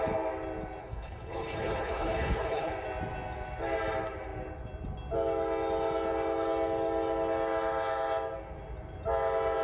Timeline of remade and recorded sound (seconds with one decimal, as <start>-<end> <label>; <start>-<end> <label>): 0.0-0.8 recorded; 0.8-2.7 remade; 2.7-9.6 recorded